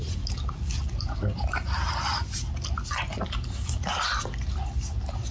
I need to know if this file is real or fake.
real